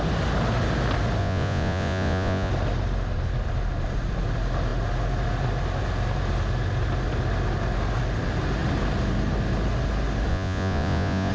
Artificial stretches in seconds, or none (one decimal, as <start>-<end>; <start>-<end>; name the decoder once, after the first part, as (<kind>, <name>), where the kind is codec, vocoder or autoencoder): 1.2-2.5 (vocoder, Vocos); 10.3-11.3